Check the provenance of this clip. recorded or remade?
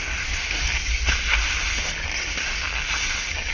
recorded